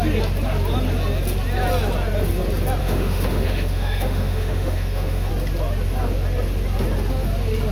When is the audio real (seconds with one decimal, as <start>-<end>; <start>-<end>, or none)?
0.0-2.8; 5.3-7.7

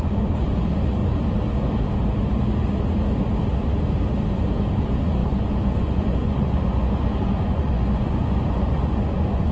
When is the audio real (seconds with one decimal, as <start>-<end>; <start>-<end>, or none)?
1.0-4.8